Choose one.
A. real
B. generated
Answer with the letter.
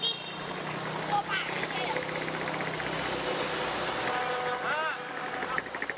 A